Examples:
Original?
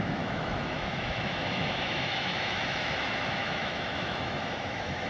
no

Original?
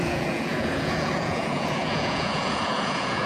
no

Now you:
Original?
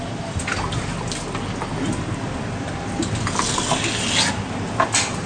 yes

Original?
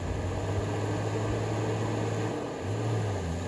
yes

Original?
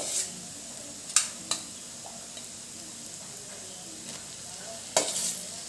yes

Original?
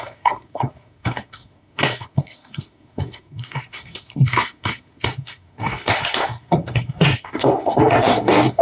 no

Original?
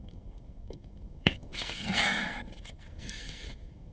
no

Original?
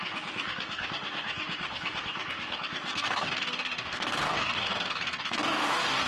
no